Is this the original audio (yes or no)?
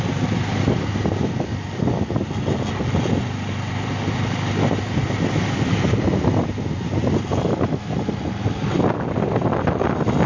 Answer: yes